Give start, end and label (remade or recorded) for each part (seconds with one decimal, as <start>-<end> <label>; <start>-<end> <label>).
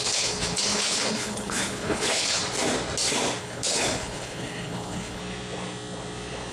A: 0.0-2.4 remade; 2.4-3.4 recorded; 3.4-5.2 remade; 5.2-6.5 recorded